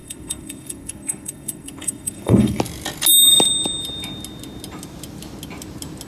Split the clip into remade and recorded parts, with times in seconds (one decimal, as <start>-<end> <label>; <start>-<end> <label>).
0.0-2.6 remade; 2.6-6.1 recorded